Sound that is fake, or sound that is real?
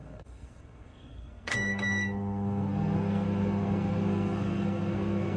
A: fake